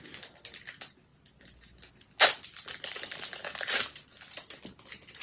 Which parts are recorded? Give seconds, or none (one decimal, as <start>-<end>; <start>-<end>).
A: 0.0-5.2

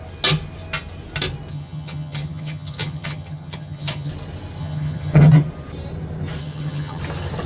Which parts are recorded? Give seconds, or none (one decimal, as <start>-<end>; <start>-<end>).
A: 0.0-1.5; 4.1-4.6; 5.3-6.4; 7.0-7.5

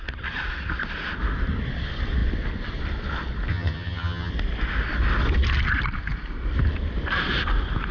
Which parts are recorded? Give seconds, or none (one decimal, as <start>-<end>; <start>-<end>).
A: 0.0-3.5; 4.3-7.9

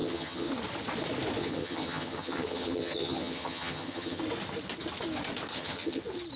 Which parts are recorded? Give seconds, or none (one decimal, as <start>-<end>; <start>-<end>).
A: 0.5-1.4; 4.2-5.5; 6.0-6.4

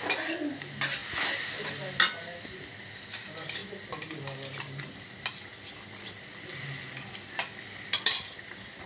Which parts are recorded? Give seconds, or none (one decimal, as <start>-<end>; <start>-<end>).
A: 0.0-8.9

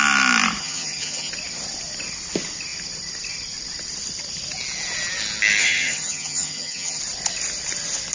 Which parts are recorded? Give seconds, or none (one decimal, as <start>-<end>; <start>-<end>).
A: 0.0-0.6; 1.3-5.6; 7.0-8.1

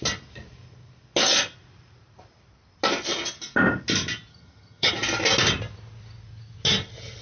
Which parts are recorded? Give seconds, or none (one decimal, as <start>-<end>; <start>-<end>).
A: 0.0-4.3; 4.9-7.2